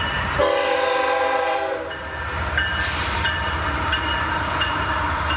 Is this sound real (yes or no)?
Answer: no